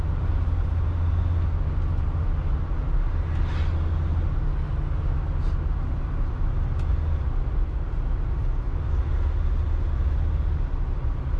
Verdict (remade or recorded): recorded